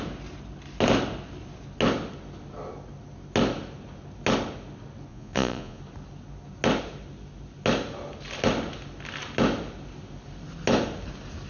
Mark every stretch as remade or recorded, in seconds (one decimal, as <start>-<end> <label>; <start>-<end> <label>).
0.0-5.1 recorded; 5.1-5.8 remade; 5.8-11.5 recorded